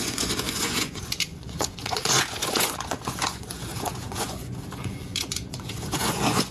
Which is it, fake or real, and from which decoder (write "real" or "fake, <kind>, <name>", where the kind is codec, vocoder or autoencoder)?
fake, vocoder, Vocos